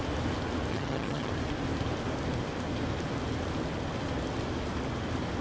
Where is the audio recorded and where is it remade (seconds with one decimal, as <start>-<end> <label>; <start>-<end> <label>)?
0.0-0.7 recorded; 0.7-1.3 remade; 1.3-5.4 recorded